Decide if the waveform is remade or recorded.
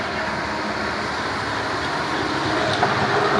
recorded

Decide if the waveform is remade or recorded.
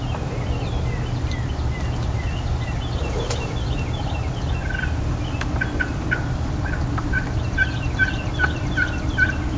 recorded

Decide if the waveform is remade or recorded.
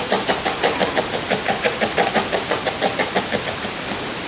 recorded